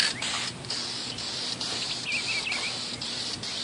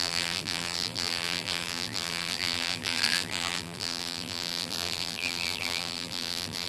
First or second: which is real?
first